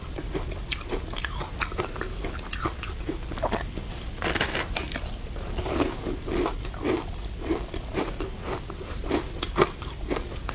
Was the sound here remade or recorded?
recorded